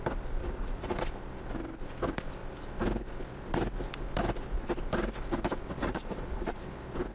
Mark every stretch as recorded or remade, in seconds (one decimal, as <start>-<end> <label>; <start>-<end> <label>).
0.0-0.4 recorded; 0.4-1.0 remade; 1.0-5.8 recorded; 5.8-6.6 remade; 6.6-7.1 recorded